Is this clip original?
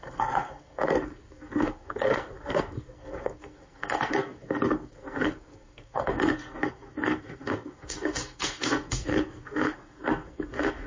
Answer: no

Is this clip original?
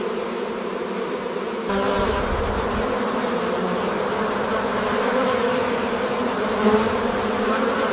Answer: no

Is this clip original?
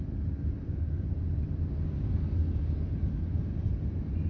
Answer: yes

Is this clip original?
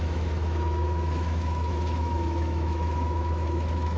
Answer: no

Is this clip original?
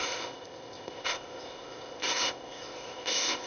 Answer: no